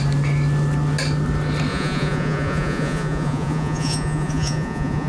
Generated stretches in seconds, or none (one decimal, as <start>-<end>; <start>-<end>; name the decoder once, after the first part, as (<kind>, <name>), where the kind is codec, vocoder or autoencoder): 1.7-5.1 (vocoder, Vocos)